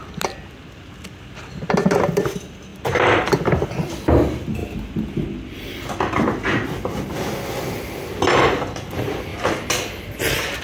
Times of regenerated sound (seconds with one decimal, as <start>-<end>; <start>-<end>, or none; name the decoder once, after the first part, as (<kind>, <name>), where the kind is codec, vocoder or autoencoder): none